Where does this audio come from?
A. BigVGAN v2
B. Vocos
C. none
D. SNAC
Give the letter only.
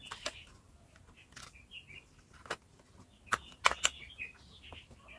C